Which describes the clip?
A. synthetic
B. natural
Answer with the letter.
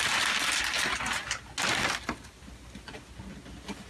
B